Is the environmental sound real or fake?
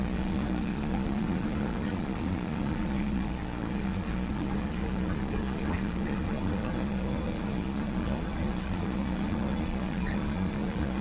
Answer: fake